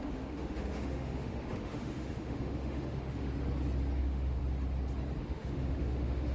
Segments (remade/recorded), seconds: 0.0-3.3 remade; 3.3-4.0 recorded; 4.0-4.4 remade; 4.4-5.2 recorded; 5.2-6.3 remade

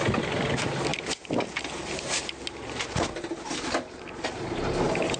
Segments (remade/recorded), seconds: 0.0-5.2 recorded

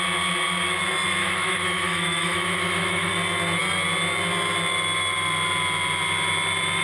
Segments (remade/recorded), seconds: 0.0-1.2 recorded; 1.2-3.1 remade; 3.1-6.8 recorded

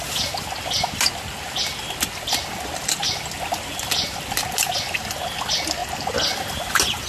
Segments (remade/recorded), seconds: 0.0-7.1 recorded